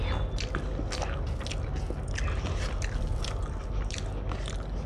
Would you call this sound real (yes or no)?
yes